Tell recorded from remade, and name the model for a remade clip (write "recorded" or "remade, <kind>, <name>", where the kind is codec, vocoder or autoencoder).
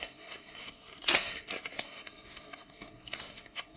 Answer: remade, codec, SNAC